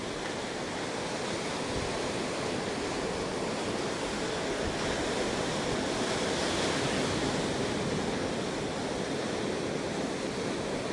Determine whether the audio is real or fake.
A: real